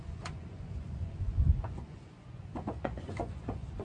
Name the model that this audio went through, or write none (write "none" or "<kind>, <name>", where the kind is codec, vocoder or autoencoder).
vocoder, Vocos